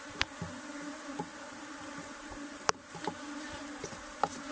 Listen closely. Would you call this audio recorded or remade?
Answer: remade